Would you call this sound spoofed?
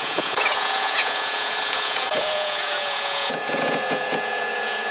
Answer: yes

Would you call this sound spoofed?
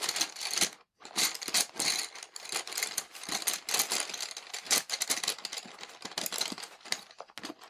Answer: no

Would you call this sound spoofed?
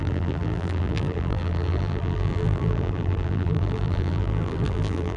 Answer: yes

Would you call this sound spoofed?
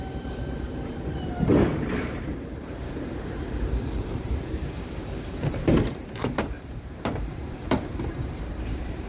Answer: yes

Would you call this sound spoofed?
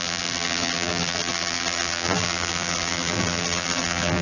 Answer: yes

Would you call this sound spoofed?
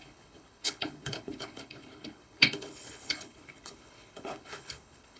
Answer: yes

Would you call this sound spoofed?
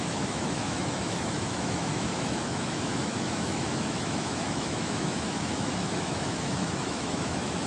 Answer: yes